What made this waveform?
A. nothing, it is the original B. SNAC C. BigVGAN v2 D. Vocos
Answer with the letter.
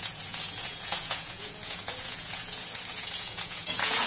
D